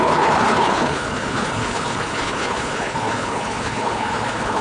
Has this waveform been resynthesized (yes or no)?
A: yes